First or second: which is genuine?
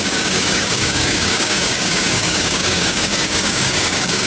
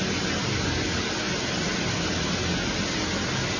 second